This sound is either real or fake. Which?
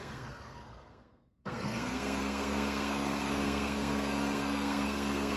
fake